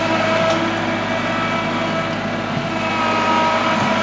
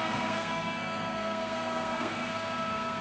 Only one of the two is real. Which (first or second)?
first